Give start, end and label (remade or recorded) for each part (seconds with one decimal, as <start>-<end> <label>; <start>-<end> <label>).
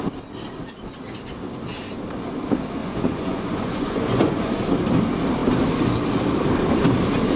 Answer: 0.0-2.8 recorded; 2.8-4.5 remade; 4.5-7.4 recorded